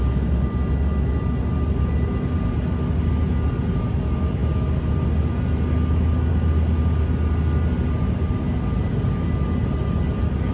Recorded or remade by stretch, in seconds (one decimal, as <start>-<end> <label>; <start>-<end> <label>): 0.0-10.5 recorded